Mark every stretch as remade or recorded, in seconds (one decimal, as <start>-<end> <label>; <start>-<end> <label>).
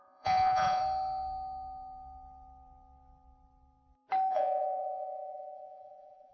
0.0-0.8 remade; 0.8-4.3 recorded; 4.3-6.3 remade